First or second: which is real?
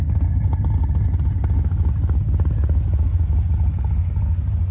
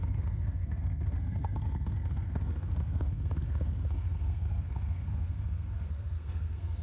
first